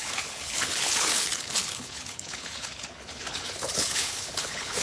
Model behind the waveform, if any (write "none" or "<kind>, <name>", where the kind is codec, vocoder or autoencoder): codec, HILCodec